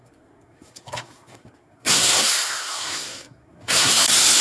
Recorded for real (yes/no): no